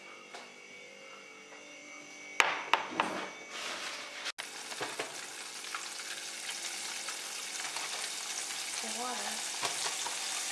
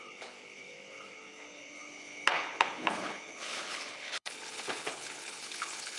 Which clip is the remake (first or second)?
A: second